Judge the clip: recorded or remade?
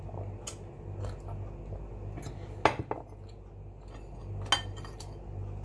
recorded